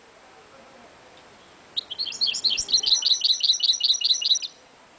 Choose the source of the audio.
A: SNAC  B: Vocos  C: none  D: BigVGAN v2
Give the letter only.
C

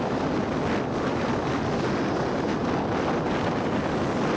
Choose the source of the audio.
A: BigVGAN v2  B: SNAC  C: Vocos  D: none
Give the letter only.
D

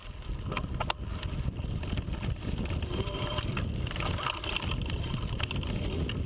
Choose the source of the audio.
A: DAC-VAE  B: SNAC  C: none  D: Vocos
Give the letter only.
C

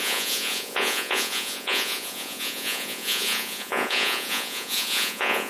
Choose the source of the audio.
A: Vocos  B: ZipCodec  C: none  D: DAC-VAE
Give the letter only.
A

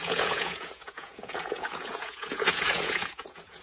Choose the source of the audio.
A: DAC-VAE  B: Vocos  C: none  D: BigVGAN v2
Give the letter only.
B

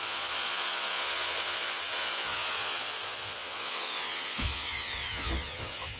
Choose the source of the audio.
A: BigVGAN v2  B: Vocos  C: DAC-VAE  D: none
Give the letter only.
B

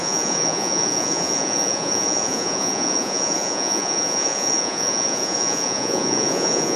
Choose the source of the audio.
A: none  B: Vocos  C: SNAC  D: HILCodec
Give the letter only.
B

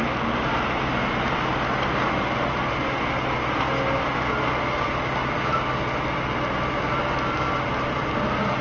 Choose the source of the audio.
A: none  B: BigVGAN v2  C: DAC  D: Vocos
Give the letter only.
A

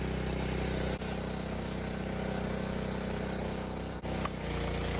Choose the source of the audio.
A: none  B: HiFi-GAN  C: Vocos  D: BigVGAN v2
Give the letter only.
A